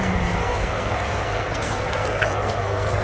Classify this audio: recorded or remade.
remade